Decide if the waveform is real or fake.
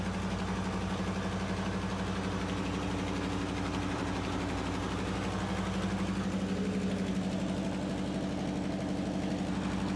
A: real